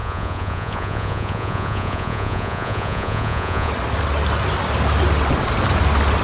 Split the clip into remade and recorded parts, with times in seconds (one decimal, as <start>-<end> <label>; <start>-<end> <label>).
0.0-3.7 remade; 3.7-6.2 recorded